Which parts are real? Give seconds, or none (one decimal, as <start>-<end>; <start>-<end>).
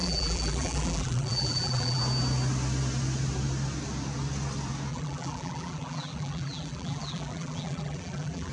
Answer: 2.0-4.9